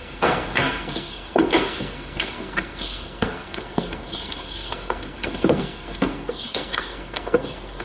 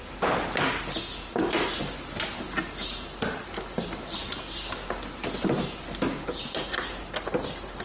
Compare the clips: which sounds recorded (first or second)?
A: second